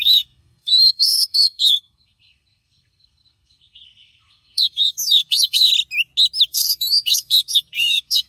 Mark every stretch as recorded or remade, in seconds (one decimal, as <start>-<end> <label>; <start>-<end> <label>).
0.0-5.7 remade; 5.7-6.5 recorded; 6.5-8.3 remade